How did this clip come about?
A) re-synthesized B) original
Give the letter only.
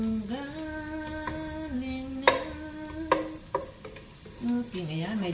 B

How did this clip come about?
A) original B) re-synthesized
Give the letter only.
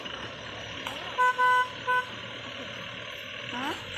A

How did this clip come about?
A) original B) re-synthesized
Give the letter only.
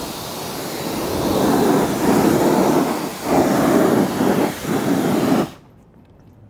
A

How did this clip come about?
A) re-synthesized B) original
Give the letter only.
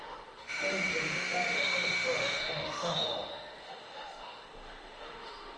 A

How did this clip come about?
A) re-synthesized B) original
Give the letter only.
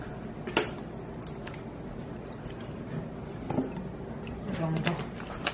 B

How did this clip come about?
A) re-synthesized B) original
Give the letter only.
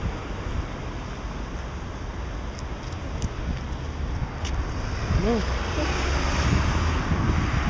B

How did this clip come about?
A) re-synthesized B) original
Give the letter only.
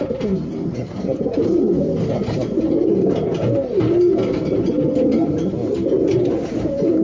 B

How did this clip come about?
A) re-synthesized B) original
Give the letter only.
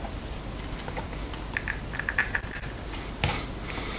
B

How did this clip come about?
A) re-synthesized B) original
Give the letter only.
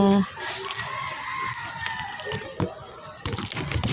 B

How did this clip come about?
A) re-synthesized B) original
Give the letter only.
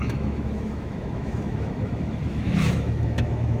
A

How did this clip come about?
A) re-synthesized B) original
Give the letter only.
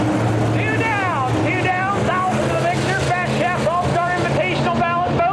B